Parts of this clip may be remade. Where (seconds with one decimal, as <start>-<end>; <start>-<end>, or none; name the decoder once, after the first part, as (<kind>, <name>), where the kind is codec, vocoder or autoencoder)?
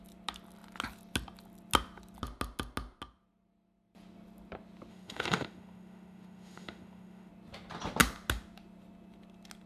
4.9-7.3 (autoencoder, DAC-VAE)